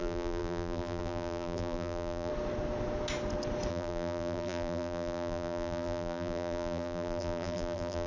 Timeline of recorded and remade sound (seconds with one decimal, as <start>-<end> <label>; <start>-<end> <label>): 0.0-2.3 remade; 2.3-3.7 recorded; 3.7-8.1 remade